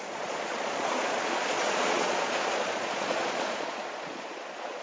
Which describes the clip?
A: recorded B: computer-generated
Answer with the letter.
B